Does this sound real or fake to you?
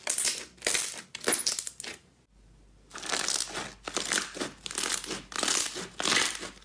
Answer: real